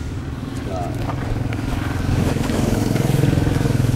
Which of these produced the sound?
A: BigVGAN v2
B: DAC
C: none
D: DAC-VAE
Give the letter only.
B